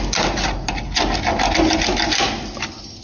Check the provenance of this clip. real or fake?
real